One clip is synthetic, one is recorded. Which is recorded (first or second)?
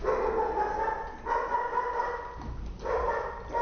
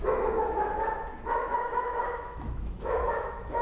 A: first